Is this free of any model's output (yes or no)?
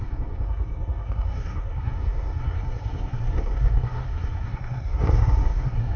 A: no